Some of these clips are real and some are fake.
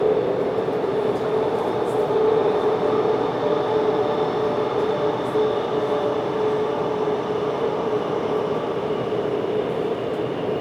real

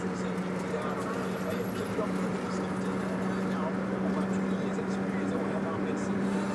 real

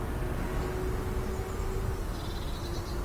real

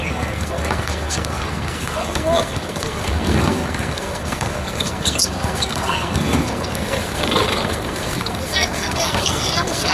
fake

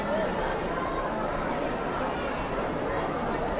real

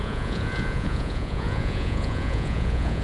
fake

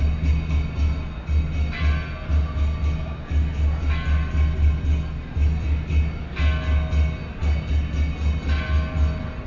real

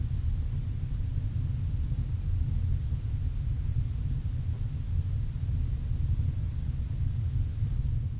real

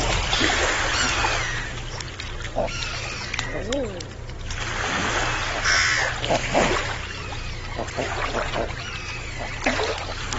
real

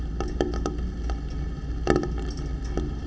real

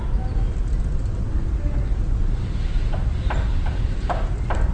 real